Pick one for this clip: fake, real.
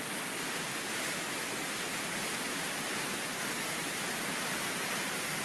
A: real